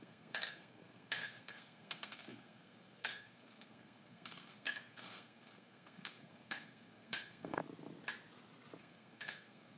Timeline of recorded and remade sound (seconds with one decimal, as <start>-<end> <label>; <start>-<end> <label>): 0.0-7.6 remade; 7.6-8.8 recorded; 8.8-9.8 remade